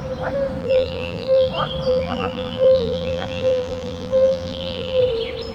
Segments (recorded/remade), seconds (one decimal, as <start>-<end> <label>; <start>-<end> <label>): 0.0-0.6 recorded; 0.6-1.5 remade; 1.5-1.9 recorded; 1.9-5.0 remade; 5.0-5.5 recorded